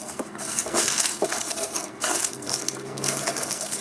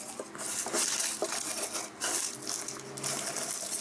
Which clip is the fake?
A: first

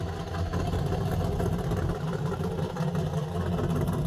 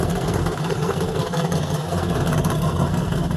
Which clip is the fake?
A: second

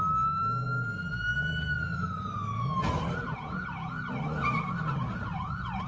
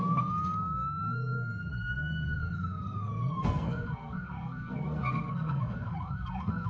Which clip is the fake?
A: second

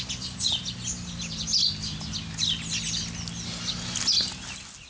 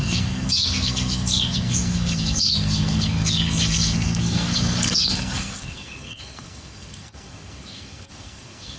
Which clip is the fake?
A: second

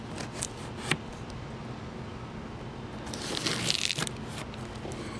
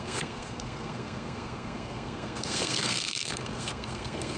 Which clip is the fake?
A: second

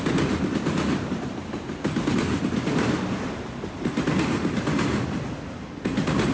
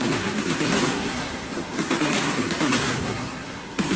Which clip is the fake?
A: second